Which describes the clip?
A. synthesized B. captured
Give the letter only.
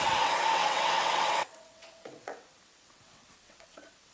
A